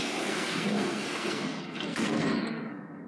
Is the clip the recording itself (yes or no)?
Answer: no